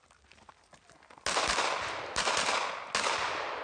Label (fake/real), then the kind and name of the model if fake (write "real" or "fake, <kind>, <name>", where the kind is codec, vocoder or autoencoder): real